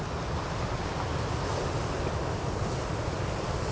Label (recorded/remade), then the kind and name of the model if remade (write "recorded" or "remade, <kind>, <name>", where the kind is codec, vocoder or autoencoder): recorded